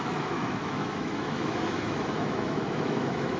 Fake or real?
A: fake